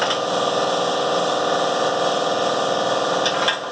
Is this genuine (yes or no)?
yes